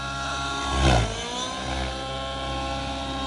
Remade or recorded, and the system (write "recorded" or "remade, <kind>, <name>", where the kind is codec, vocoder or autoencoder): recorded